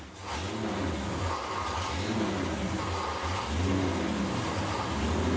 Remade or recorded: recorded